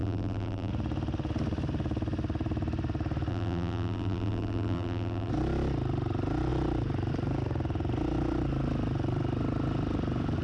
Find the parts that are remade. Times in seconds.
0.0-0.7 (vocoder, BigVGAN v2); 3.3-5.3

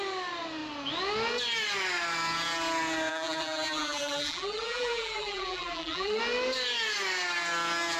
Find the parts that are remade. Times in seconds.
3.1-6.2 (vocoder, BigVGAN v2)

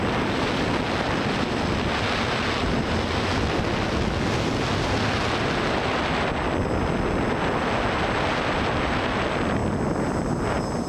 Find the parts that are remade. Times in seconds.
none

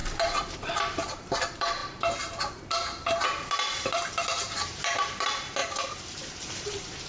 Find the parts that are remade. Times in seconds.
0.0-7.1 (vocoder, BigVGAN v2)